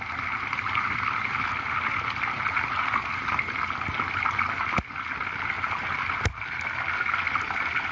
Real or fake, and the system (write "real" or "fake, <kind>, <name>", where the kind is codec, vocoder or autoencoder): real